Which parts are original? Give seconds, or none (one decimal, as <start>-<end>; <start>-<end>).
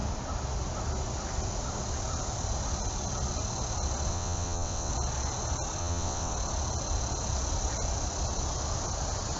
0.0-4.1; 4.9-5.8; 6.3-9.4